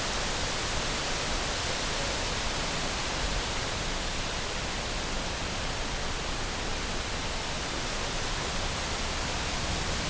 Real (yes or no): yes